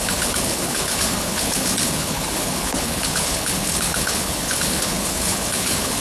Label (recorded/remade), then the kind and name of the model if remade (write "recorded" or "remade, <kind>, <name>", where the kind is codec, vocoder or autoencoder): remade, codec, HILCodec